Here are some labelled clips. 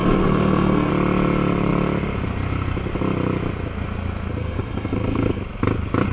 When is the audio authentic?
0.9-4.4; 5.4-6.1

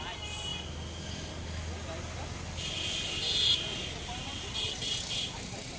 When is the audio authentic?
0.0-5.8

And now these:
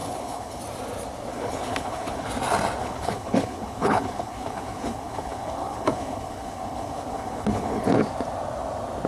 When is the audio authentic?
0.6-1.3; 2.3-2.8; 7.9-9.1